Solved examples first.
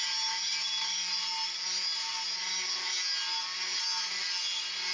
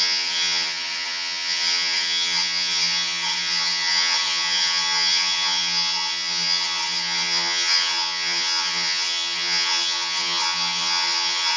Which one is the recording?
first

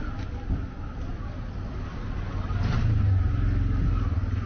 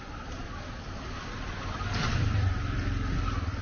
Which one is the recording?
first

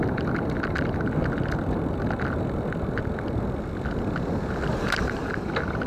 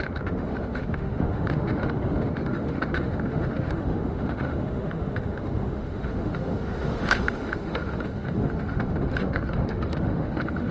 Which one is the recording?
first